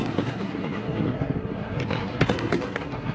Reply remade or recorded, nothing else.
remade